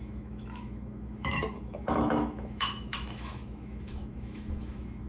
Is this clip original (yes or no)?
no